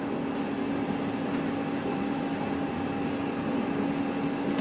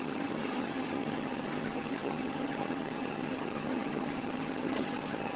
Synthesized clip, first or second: second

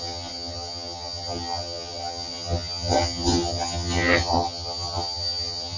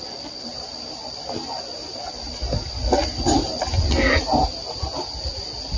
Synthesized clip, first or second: first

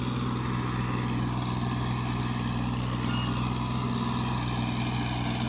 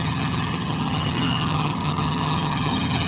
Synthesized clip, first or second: second